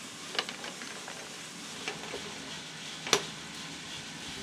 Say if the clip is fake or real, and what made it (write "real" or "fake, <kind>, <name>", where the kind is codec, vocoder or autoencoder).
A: real